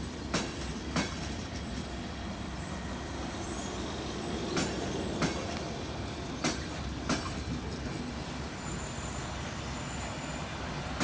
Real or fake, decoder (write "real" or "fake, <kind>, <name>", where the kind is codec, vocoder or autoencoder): real